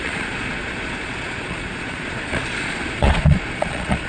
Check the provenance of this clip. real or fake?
fake